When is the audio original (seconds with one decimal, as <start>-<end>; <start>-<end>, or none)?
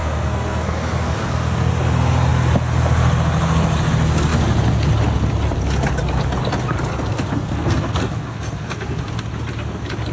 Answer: 1.7-6.9; 9.0-10.1